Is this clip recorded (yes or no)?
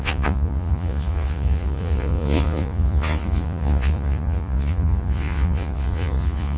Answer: no